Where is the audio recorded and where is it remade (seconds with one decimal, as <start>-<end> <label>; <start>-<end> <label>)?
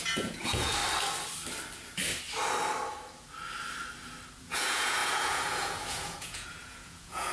0.0-0.8 remade; 0.8-4.4 recorded; 4.4-7.3 remade